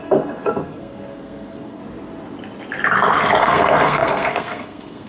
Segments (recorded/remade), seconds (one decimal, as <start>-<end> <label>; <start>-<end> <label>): 0.0-1.8 remade; 1.8-3.4 recorded; 3.4-5.1 remade